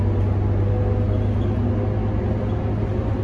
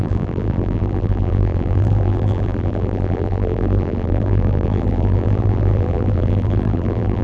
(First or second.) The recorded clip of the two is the first